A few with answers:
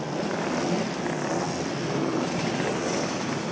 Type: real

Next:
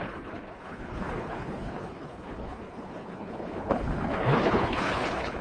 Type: fake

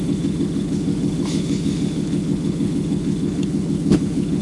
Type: fake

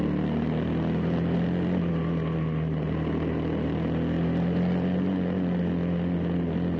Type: real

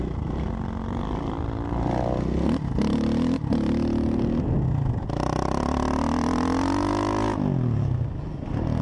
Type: real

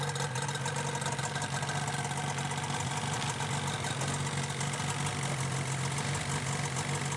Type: real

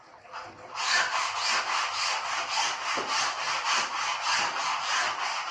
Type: real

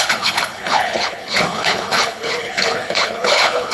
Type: fake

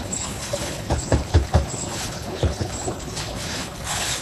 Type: fake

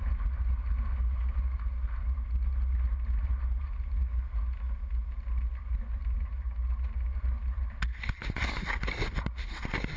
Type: real